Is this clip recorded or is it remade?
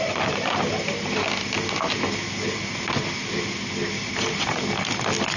recorded